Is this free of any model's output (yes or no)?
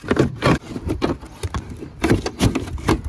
yes